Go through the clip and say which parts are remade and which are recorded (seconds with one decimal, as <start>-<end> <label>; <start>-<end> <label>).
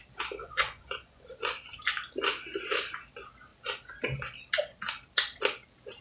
0.0-0.4 recorded; 0.4-1.2 remade; 1.2-6.0 recorded